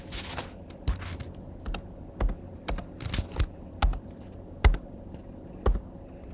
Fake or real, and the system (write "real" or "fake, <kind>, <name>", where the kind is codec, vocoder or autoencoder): real